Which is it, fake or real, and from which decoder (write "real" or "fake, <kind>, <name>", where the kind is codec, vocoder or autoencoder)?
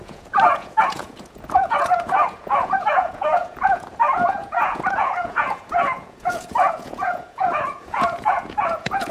fake, vocoder, Vocos